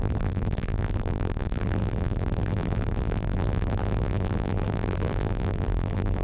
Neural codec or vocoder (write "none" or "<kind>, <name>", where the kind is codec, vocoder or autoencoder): vocoder, BigVGAN v2